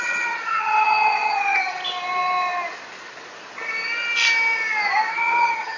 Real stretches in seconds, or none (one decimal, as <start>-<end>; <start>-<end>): 1.8-5.1